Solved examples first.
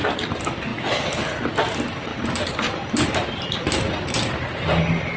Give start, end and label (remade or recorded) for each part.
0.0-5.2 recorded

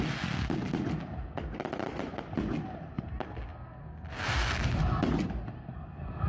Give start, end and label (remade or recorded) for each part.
0.0-6.3 recorded

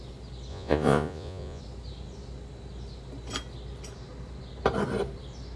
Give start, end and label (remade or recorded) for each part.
0.0-0.5 recorded; 0.5-1.6 remade; 1.6-5.6 recorded

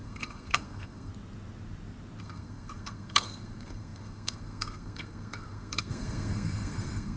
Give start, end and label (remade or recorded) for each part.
0.0-1.1 remade; 1.1-2.2 recorded; 2.2-7.2 remade

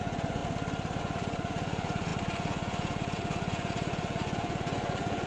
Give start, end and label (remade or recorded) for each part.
0.0-0.4 remade; 0.4-1.0 recorded; 1.0-5.3 remade